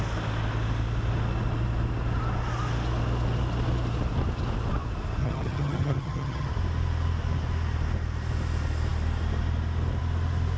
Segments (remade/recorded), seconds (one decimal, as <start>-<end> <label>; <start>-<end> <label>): 0.0-5.2 recorded; 5.2-6.5 remade; 6.5-10.6 recorded

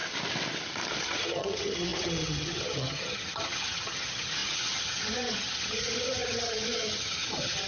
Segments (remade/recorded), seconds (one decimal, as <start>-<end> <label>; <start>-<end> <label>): 0.0-1.0 recorded; 1.0-7.7 remade

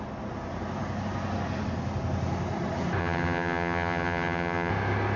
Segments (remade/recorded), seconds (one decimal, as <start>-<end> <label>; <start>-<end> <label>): 0.0-3.0 recorded; 3.0-4.7 remade; 4.7-5.2 recorded

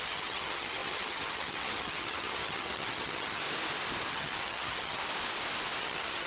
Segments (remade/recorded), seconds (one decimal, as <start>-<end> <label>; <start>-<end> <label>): 0.0-3.4 remade; 3.4-4.1 recorded; 4.1-5.0 remade; 5.0-5.8 recorded; 5.8-6.3 remade

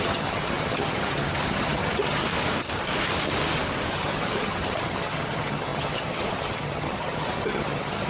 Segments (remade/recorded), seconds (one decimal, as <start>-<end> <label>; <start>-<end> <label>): 0.0-2.2 remade; 2.2-3.9 recorded; 3.9-8.1 remade

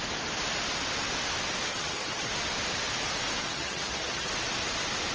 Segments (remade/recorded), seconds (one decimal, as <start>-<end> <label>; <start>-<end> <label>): 0.0-1.7 recorded; 1.7-2.3 remade; 2.3-3.4 recorded; 3.4-4.3 remade; 4.3-5.1 recorded

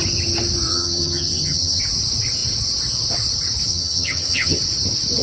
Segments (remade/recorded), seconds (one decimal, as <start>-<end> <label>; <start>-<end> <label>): 0.0-0.7 recorded; 0.7-1.8 remade; 1.8-3.7 recorded; 3.7-4.6 remade; 4.6-5.2 recorded

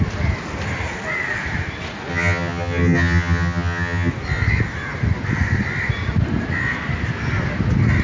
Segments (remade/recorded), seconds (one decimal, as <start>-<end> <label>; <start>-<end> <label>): 0.0-2.1 recorded; 2.1-4.1 remade; 4.1-8.0 recorded